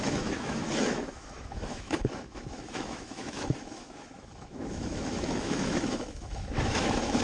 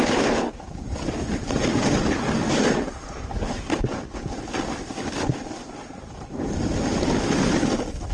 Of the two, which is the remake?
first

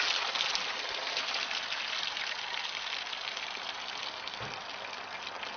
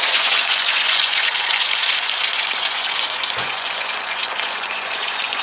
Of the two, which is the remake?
second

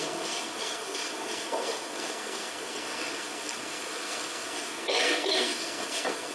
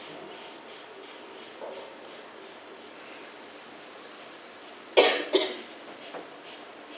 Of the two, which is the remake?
first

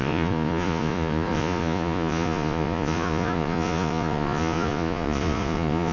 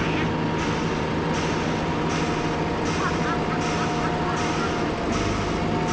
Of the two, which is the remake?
first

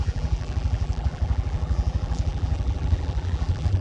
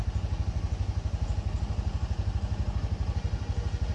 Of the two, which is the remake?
first